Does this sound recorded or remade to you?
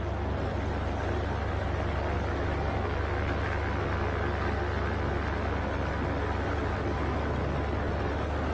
recorded